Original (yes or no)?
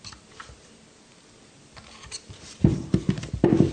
no